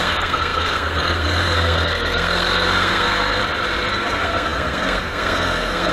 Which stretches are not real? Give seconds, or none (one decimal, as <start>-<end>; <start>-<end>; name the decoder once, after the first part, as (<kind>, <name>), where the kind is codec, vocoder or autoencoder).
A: 0.0-3.4 (codec, SNAC); 3.9-5.9